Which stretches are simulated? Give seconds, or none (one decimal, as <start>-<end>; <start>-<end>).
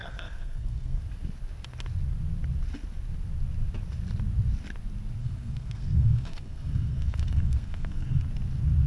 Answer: 0.0-1.0; 5.2-8.2